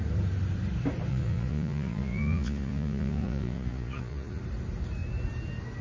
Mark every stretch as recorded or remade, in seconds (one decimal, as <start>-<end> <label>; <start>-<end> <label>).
0.0-1.1 recorded; 1.1-4.4 remade; 4.4-5.8 recorded